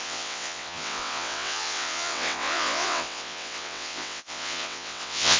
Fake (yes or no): yes